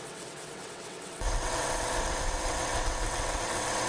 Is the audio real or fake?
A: fake